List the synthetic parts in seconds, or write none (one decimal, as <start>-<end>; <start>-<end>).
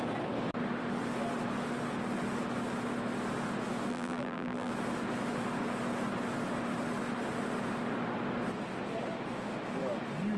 3.9-4.7